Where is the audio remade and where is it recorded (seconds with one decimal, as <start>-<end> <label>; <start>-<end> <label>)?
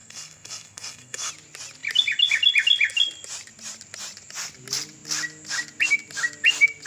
0.0-1.3 remade; 1.3-6.9 recorded